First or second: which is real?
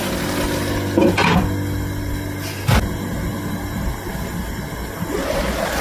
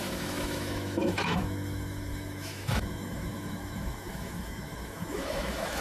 first